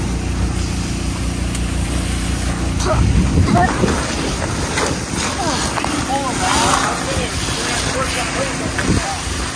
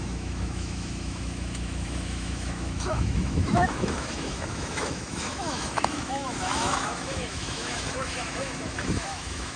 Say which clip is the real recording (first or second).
first